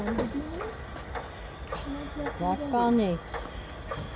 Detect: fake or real real